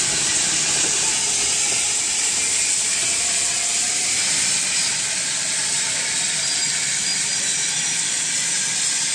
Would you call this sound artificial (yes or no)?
no